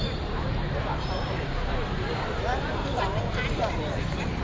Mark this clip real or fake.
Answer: fake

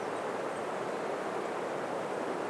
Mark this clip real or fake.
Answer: fake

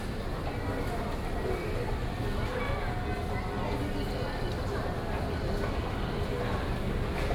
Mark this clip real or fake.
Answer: real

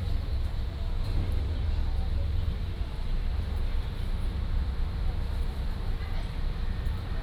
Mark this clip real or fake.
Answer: fake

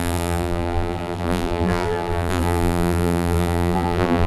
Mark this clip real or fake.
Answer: fake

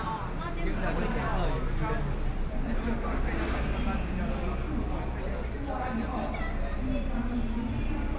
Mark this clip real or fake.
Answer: real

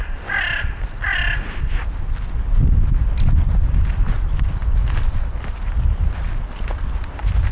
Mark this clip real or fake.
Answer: real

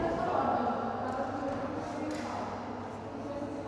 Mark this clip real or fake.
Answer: real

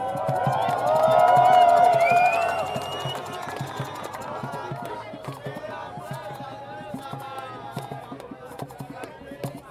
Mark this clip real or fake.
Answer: real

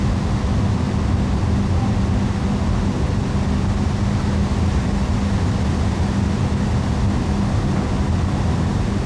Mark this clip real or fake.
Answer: real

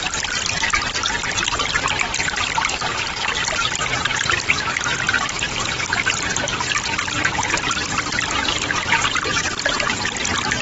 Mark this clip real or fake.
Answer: fake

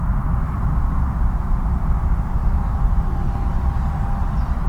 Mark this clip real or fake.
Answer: real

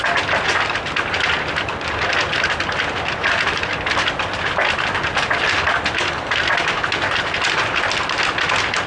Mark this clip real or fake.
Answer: real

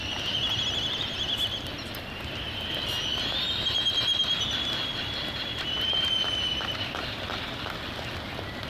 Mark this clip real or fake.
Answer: fake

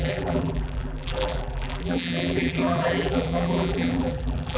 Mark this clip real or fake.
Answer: fake